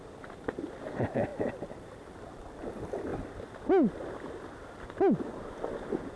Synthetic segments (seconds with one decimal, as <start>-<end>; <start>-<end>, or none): none